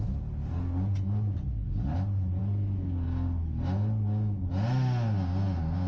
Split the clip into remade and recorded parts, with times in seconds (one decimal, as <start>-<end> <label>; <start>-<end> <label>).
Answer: 0.0-5.9 recorded